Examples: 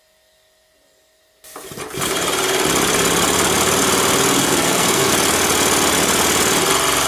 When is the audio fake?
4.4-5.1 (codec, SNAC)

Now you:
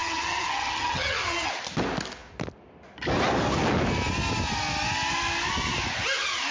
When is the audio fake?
0.0-1.5 (vocoder, HiFi-GAN)

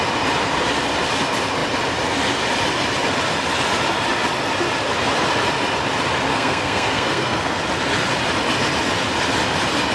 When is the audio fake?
6.3-7.6 (codec, SNAC)

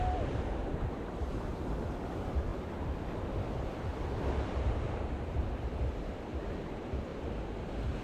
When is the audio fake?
0.0-1.5 (vocoder, BigVGAN v2); 2.0-7.1

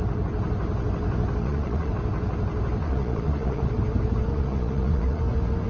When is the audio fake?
1.4-1.9 (vocoder, Vocos); 2.8-3.7; 4.3-5.2